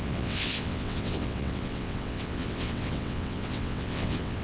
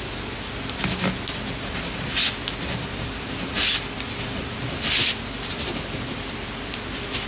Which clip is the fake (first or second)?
first